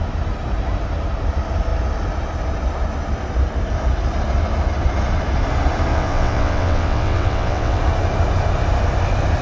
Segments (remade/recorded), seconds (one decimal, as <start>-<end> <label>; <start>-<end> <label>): 0.0-5.9 recorded; 5.9-7.8 remade; 7.8-9.4 recorded